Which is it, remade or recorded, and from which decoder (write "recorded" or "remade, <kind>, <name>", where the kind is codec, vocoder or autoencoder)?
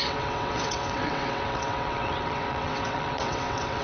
remade, vocoder, WaveNeXt